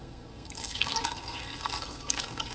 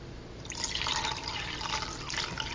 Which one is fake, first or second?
first